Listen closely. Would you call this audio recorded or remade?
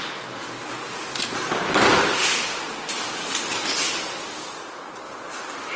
recorded